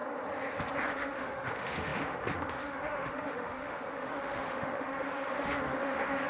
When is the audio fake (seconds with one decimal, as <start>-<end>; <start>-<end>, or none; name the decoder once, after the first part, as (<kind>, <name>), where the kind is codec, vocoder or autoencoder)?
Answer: 0.9-6.3 (autoencoder, DAC-VAE)